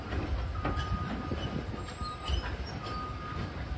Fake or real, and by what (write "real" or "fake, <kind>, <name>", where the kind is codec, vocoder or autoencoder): real